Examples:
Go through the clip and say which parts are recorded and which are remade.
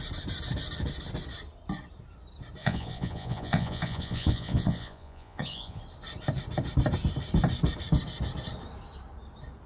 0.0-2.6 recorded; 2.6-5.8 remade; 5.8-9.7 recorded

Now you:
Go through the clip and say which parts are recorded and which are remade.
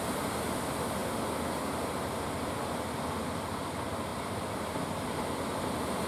0.0-4.1 recorded; 4.1-6.1 remade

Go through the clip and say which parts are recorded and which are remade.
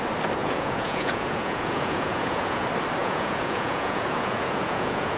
0.0-0.4 recorded; 0.4-2.6 remade; 2.6-3.0 recorded; 3.0-5.2 remade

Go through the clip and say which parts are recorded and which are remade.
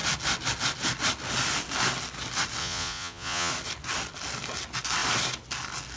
0.0-2.6 recorded; 2.6-3.5 remade; 3.5-6.0 recorded